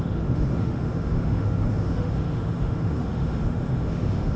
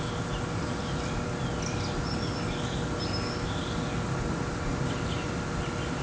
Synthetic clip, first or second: first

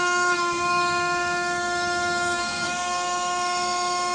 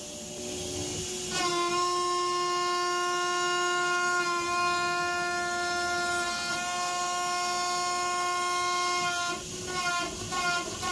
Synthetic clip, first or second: first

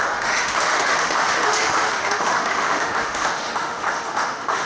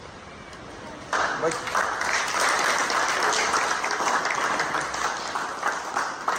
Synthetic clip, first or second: first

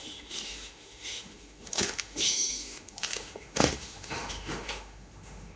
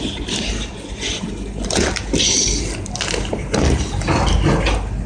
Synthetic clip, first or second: first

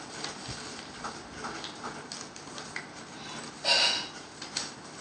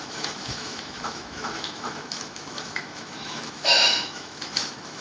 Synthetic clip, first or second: second